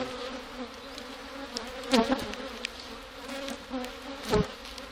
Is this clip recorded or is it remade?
recorded